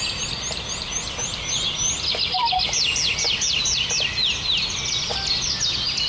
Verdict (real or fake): real